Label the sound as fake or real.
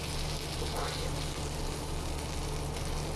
real